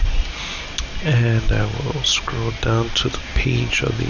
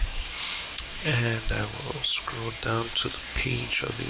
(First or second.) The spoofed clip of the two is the second